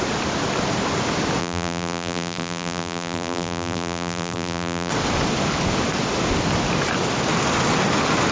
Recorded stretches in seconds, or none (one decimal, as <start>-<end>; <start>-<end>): 0.0-1.4; 4.9-8.3